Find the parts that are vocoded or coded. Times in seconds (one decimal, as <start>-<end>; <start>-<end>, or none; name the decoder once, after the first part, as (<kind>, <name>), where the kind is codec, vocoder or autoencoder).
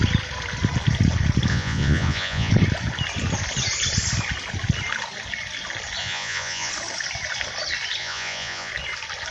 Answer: 1.5-2.5 (vocoder, Vocos); 6.0-6.7; 8.0-8.7